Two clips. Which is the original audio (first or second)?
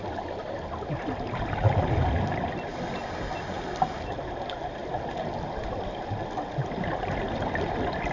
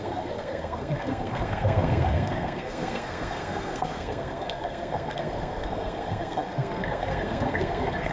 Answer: first